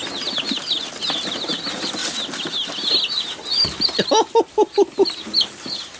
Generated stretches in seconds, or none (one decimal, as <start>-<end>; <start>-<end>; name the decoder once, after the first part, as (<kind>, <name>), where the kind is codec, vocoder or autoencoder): none